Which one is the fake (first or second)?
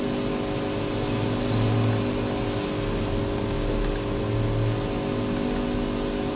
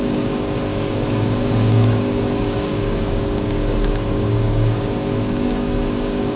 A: second